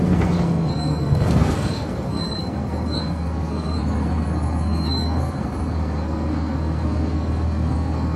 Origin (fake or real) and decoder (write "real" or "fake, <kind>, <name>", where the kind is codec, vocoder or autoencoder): fake, codec, SNAC